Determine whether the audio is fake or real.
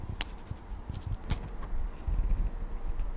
real